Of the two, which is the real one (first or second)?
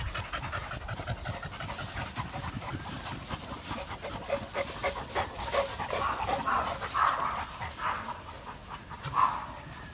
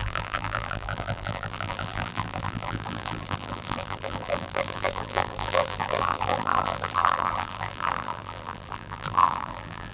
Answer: first